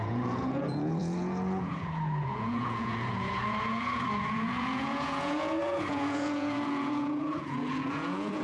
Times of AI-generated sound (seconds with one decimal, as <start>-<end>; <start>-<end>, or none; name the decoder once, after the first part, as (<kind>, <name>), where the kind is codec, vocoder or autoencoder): 0.0-8.4 (vocoder, Vocos)